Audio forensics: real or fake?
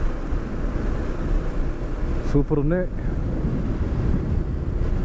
real